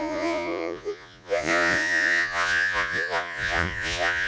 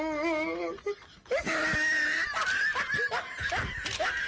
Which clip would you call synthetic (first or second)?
first